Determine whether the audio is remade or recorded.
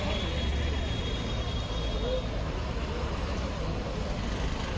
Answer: recorded